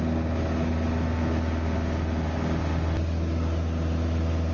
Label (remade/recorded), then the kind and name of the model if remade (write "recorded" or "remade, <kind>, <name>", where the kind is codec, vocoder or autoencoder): recorded